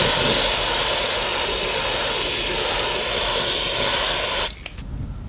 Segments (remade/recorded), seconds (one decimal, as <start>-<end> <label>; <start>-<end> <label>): 0.0-5.3 recorded